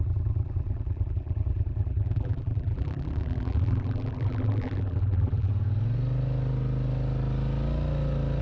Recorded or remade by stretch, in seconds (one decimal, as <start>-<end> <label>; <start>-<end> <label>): 0.0-5.5 remade; 5.5-8.4 recorded